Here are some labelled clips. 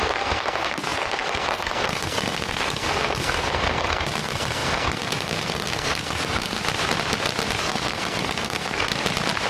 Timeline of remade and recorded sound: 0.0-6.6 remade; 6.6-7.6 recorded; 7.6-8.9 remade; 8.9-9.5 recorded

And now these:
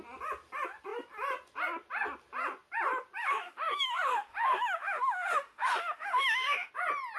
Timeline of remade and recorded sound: 0.0-3.2 recorded; 3.2-6.7 remade; 6.7-7.2 recorded

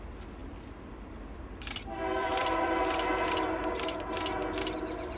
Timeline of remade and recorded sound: 0.0-0.4 recorded; 0.4-2.8 remade; 2.8-5.2 recorded

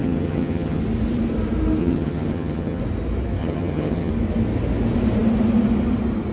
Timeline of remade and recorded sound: 0.0-0.8 remade; 0.8-1.8 recorded; 1.8-2.8 remade; 2.8-3.4 recorded; 3.4-4.1 remade; 4.1-6.3 recorded

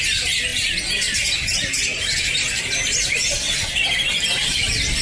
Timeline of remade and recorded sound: 0.0-5.0 recorded

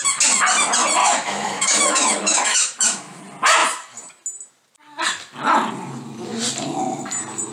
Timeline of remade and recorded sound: 0.0-1.0 recorded; 1.0-3.2 remade; 3.2-7.5 recorded

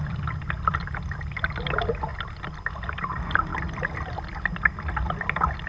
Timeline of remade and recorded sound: 0.0-5.7 recorded